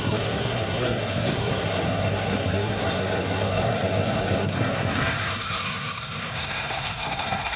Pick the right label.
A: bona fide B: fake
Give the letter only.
B